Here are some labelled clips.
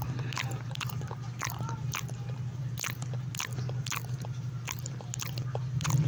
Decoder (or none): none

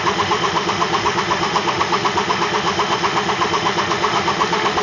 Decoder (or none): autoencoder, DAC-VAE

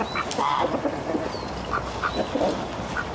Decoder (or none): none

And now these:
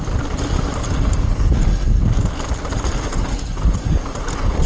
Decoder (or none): none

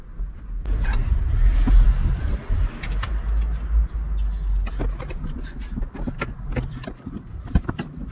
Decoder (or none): none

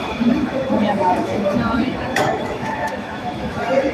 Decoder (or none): autoencoder, DAC-VAE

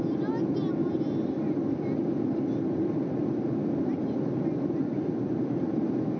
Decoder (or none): none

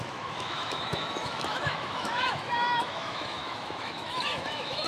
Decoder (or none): autoencoder, DAC-VAE